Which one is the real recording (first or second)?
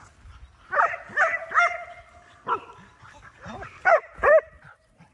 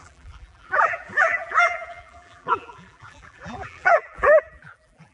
first